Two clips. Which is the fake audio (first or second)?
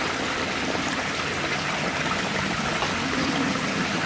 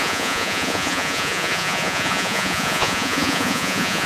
second